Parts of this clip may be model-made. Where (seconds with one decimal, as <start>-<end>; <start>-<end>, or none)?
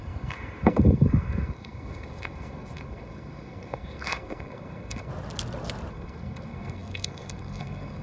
0.0-5.1; 5.9-8.0